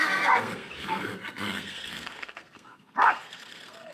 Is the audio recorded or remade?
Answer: remade